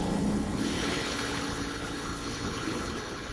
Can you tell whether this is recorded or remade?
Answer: remade